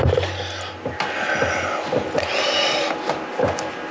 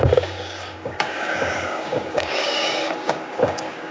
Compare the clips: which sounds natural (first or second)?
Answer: first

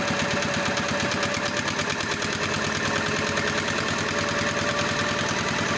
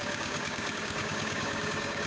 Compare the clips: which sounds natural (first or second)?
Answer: first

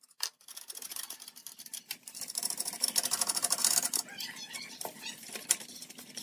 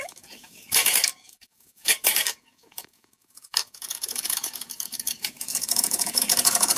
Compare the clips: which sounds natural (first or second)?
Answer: first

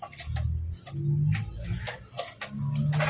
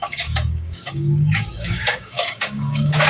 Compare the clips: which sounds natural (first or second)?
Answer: first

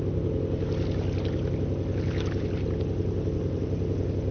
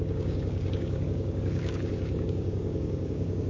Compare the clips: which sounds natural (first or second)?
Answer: first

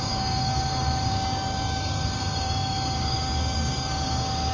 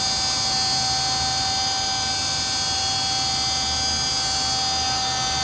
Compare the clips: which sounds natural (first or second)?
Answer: second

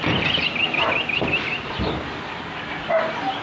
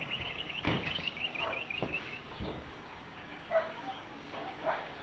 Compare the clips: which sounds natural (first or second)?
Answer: first